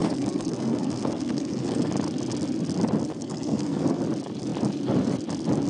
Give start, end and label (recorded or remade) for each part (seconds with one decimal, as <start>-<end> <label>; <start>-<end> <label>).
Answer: 0.0-1.9 remade; 1.9-3.1 recorded; 3.1-4.0 remade; 4.0-5.7 recorded